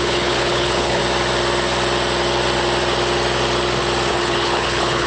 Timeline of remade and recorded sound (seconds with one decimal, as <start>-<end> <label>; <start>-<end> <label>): 0.0-1.0 remade; 1.0-4.1 recorded; 4.1-5.1 remade